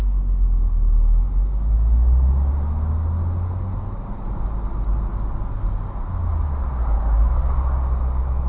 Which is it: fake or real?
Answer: real